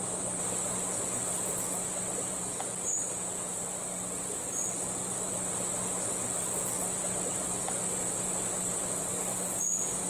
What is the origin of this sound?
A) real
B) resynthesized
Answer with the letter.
A